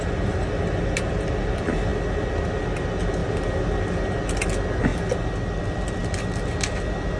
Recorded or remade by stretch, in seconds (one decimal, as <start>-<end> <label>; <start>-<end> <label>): 0.0-3.2 recorded; 3.2-3.9 remade; 3.9-7.2 recorded